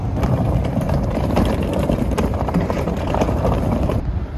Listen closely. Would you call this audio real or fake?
fake